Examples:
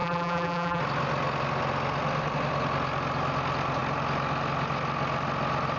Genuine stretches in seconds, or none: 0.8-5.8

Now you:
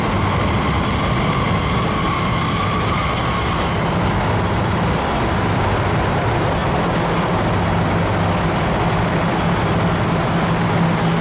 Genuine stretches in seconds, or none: 0.0-11.2

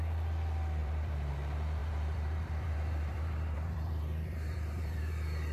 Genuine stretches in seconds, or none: 0.0-0.8; 1.3-1.8; 5.1-5.5

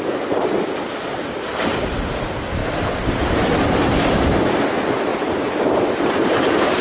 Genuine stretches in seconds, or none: 0.0-2.6; 4.4-5.1; 5.6-6.8